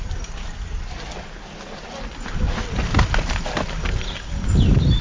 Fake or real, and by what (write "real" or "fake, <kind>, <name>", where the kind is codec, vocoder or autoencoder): real